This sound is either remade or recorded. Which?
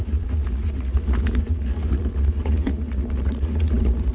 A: remade